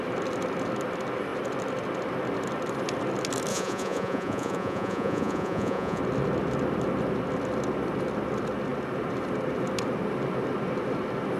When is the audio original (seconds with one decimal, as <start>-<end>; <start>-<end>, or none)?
0.0-3.5; 6.0-11.4